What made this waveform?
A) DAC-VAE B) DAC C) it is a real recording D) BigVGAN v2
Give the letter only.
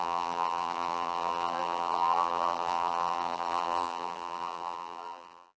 D